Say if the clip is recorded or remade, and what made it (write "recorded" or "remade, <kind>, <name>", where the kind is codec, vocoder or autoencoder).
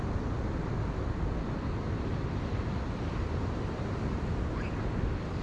recorded